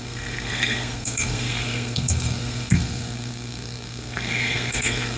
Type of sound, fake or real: fake